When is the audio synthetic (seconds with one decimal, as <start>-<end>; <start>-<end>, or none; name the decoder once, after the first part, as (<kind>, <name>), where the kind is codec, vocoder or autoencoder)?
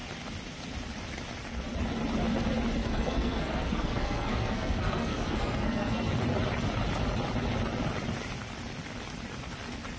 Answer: 2.8-6.1 (codec, SNAC)